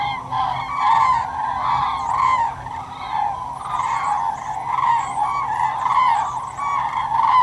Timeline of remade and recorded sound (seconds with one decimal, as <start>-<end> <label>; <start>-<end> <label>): 0.0-7.4 recorded